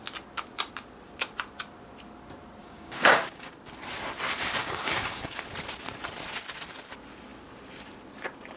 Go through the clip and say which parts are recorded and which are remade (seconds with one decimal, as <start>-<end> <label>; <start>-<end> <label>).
0.0-2.6 recorded; 2.6-3.5 remade; 3.5-4.6 recorded; 4.6-5.4 remade; 5.4-8.6 recorded